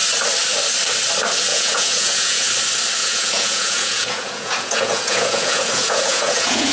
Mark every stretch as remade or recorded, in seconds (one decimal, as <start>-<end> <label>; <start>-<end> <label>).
0.0-1.5 recorded; 1.5-2.5 remade; 2.5-3.0 recorded; 3.0-6.7 remade